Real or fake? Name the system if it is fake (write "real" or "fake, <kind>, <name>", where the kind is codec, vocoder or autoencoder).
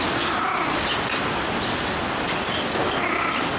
real